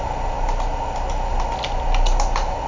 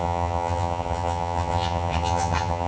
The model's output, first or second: second